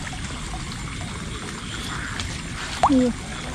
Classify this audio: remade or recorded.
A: recorded